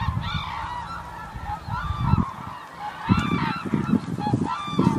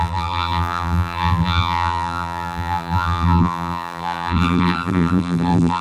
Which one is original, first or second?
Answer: first